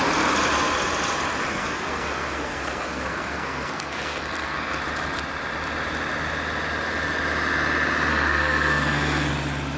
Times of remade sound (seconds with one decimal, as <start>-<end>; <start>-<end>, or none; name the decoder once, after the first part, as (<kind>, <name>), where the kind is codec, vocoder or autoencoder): 1.5-4.8 (codec, SNAC); 8.1-9.3